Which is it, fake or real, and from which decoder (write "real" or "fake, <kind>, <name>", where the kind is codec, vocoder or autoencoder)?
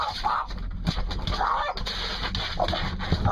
real